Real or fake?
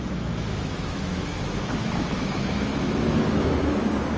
fake